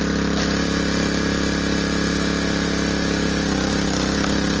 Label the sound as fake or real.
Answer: real